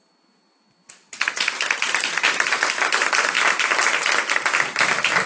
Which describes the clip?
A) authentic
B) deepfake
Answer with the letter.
B